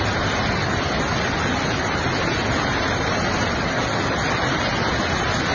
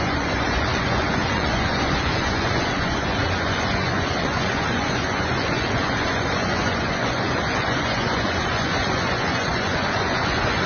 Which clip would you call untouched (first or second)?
first